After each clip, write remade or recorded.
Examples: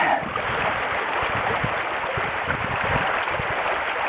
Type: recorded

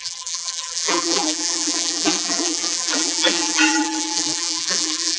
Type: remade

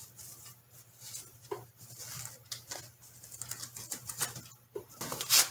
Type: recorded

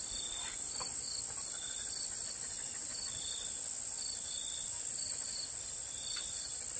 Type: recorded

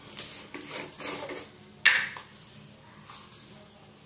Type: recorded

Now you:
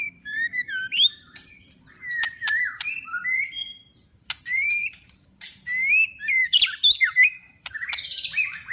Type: remade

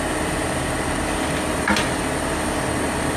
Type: recorded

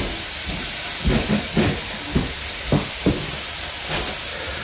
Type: recorded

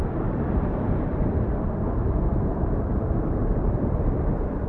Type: remade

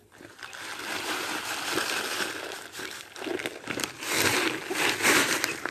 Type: remade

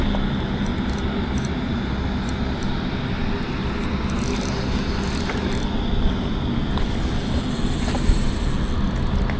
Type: recorded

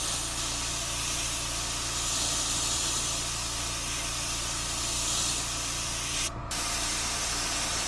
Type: remade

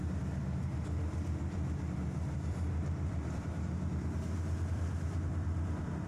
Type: remade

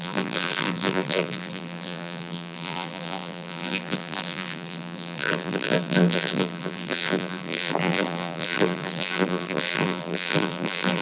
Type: remade